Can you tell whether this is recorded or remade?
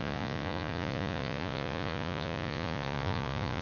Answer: remade